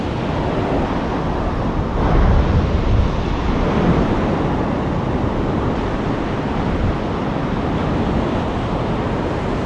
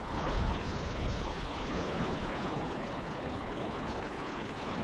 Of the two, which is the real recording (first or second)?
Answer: first